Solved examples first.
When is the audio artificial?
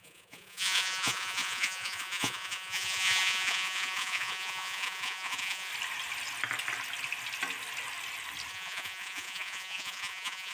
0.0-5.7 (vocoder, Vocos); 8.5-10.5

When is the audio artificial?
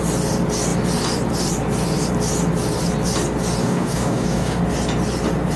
3.6-4.6 (codec, DAC)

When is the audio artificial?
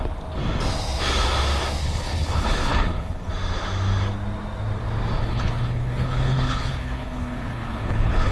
1.8-3.3 (codec, HILCodec); 5.2-8.3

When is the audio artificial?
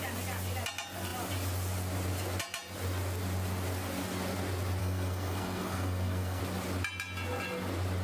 4.8-6.4 (codec, SNAC)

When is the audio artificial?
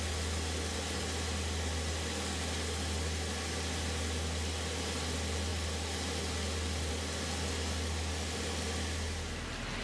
none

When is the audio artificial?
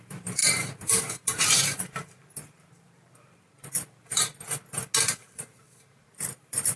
0.0-4.3 (vocoder, BigVGAN v2); 5.1-6.8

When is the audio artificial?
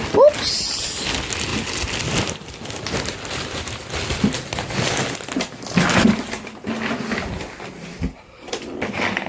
none